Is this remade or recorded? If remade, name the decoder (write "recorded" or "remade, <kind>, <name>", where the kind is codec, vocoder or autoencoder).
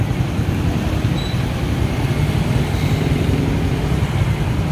recorded